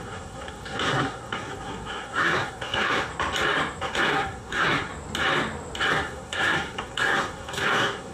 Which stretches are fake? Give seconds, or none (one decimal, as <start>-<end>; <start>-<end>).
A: 0.0-3.1; 3.8-4.9; 5.9-8.1